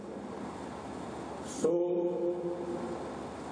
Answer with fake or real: real